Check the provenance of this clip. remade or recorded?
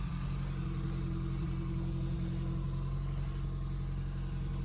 recorded